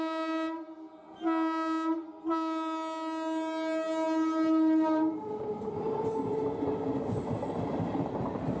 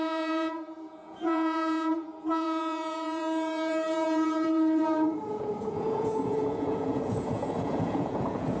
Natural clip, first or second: first